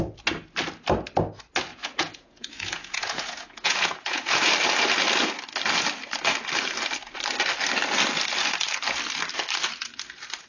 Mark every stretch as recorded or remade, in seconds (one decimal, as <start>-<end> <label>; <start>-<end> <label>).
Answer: 0.0-1.7 recorded; 1.7-4.5 remade; 4.5-10.5 recorded